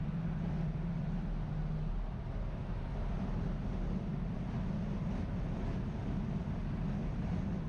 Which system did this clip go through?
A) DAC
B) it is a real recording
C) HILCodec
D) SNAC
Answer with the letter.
B